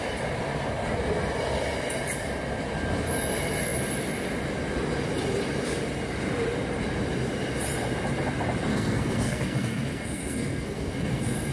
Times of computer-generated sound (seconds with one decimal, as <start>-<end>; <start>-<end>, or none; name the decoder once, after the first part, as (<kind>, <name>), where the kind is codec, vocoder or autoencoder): 8.7-11.5 (codec, SNAC)